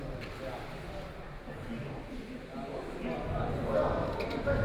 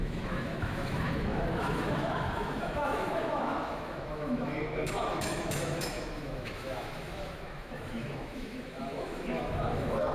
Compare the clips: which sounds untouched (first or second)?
first